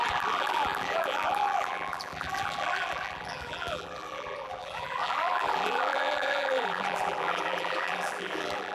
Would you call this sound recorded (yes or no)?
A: no